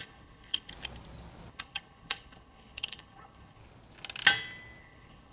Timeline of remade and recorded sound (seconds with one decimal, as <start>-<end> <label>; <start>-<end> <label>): 0.0-0.7 remade; 0.7-1.5 recorded; 1.5-3.6 remade; 3.6-4.8 recorded; 4.8-5.3 remade

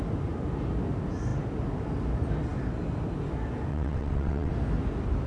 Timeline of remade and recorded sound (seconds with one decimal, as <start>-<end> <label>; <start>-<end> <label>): 0.0-3.7 recorded; 3.7-4.5 remade; 4.5-5.3 recorded